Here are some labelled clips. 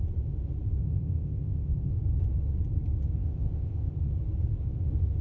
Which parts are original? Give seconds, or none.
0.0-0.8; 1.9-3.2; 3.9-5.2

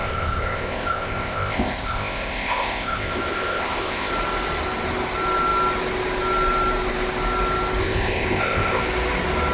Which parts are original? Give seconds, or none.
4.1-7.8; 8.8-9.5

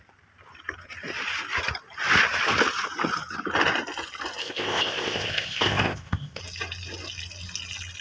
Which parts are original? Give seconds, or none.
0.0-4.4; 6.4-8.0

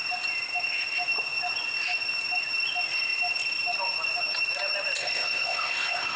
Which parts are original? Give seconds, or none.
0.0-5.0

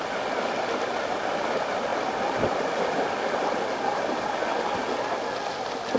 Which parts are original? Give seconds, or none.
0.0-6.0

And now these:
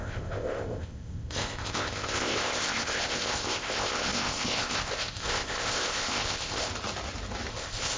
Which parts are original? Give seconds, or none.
6.7-7.5

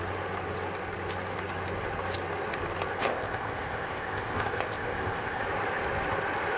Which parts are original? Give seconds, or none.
0.0-3.0; 5.4-6.6

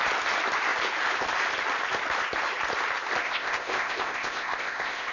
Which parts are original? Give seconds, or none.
0.0-3.2